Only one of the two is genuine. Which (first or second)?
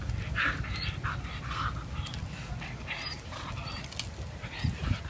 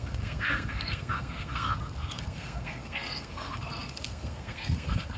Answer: first